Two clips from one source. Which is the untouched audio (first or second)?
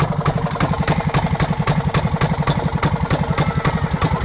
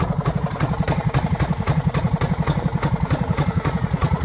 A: first